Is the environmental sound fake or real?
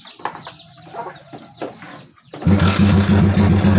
real